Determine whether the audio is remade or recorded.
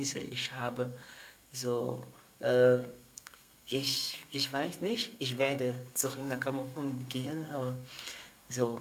remade